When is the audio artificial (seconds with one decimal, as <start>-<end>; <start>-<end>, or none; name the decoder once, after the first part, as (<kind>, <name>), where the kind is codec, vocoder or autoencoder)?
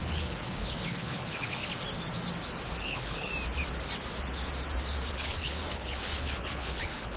0.0-1.6 (codec, HILCodec); 2.8-3.3; 5.1-7.2